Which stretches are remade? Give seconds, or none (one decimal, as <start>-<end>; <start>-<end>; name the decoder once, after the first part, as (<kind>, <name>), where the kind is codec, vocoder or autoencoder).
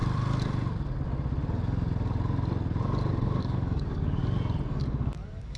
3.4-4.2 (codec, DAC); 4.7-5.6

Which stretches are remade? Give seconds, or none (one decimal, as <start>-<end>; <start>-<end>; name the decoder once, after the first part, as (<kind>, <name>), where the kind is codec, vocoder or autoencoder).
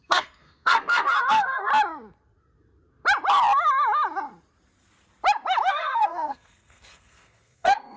0.0-1.7 (codec, SNAC); 5.7-8.0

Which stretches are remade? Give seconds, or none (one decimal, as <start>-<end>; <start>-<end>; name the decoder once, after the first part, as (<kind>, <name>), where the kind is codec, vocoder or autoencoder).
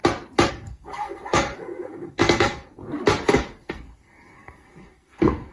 0.5-2.8 (codec, SNAC); 3.3-5.5